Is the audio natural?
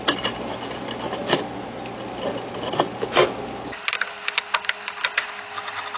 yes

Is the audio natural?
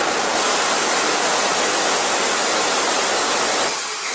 yes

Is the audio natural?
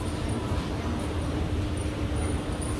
yes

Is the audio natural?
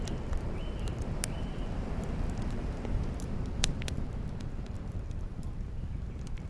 no